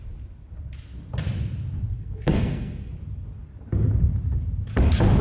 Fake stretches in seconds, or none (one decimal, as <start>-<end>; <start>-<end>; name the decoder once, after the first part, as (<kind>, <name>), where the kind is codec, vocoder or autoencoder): 1.9-2.9 (codec, SNAC)